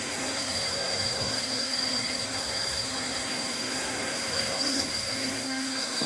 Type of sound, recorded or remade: remade